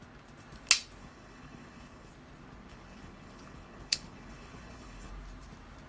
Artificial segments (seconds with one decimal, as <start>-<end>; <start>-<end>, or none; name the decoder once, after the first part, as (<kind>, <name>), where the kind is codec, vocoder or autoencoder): 1.0-2.1 (codec, HILCodec); 2.7-5.1